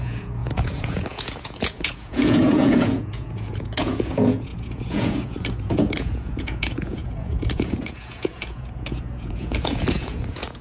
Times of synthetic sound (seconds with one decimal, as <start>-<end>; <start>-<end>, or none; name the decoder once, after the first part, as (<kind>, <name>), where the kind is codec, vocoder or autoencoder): 0.0-10.6 (vocoder, Vocos)